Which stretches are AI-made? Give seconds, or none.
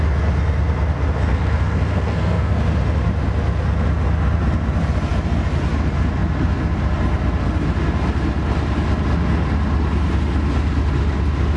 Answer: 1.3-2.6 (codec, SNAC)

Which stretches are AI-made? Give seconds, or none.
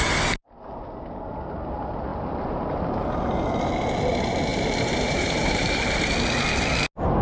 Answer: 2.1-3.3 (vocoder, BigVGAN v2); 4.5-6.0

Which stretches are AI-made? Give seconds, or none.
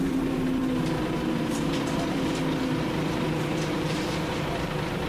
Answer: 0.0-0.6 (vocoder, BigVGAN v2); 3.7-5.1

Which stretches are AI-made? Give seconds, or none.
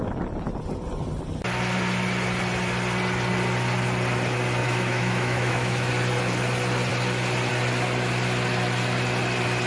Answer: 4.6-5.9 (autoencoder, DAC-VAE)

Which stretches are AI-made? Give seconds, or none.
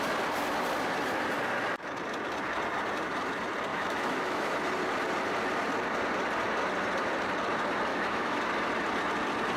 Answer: 3.7-4.5 (autoencoder, DAC-VAE); 7.9-8.4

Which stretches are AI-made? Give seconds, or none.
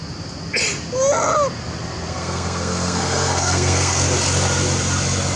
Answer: 2.1-3.9 (codec, SNAC)